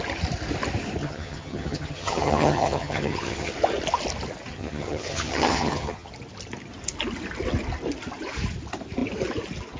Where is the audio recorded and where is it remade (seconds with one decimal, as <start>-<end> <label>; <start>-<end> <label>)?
0.0-1.0 recorded; 1.0-3.5 remade; 3.5-4.5 recorded; 4.5-6.1 remade; 6.1-9.8 recorded